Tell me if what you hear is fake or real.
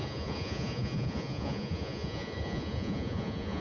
fake